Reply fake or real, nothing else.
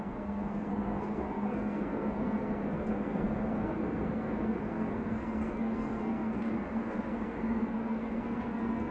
fake